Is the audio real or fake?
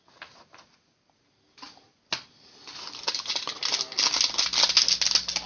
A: real